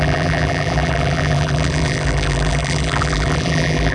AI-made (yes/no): yes